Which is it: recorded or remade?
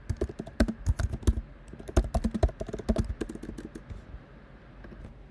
recorded